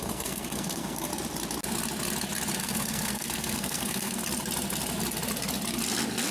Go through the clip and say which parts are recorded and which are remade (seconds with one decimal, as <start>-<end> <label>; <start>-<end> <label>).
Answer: 0.0-1.1 remade; 1.1-2.6 recorded; 2.6-4.2 remade; 4.2-6.3 recorded